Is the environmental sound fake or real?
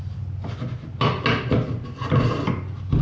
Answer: real